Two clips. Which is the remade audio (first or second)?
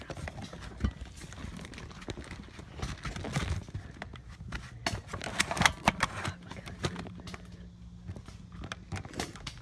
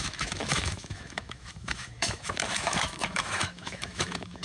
second